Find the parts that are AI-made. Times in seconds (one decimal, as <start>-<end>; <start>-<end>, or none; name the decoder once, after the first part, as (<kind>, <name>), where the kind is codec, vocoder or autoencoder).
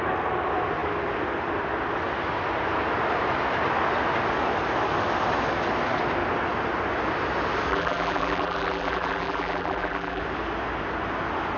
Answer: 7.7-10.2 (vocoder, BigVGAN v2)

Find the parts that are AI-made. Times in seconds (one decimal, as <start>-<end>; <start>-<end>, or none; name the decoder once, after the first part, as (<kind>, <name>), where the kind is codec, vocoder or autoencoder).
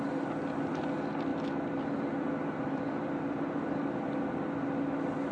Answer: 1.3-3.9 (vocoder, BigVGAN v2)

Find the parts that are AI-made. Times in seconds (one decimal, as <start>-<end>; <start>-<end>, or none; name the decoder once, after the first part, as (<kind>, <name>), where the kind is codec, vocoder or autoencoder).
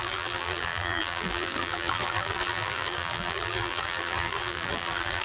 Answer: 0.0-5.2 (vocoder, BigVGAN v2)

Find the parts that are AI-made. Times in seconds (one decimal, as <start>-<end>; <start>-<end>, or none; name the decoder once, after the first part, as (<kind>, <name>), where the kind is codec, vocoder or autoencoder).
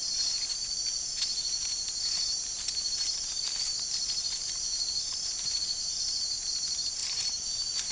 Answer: 7.0-7.5 (vocoder, BigVGAN v2)